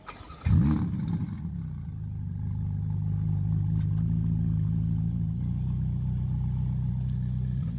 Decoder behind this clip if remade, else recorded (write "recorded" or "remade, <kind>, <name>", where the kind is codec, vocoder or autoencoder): recorded